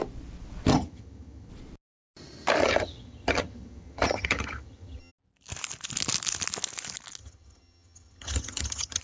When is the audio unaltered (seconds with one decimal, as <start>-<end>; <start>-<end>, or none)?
0.0-0.7; 1.5-2.6; 5.1-7.2